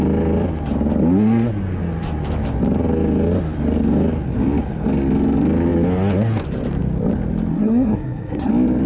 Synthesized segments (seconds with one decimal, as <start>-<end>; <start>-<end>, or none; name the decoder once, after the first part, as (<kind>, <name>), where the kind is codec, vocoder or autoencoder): 7.5-8.5 (codec, SNAC)